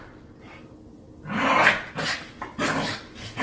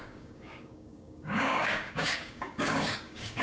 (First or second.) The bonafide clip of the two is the first